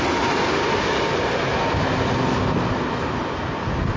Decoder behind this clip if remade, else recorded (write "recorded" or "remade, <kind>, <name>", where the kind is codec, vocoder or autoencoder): recorded